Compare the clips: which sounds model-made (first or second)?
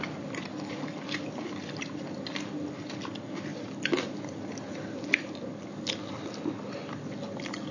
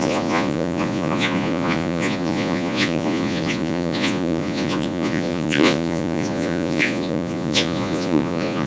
second